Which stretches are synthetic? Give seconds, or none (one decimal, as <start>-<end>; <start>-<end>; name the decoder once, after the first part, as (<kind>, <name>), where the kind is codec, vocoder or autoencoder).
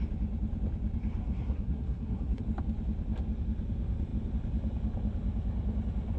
1.2-2.4 (codec, SNAC)